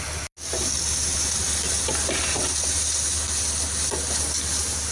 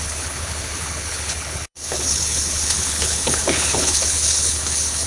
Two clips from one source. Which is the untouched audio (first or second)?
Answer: first